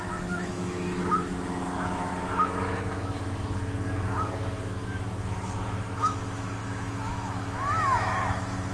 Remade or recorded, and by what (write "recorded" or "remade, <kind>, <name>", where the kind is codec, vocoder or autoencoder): remade, autoencoder, DAC-VAE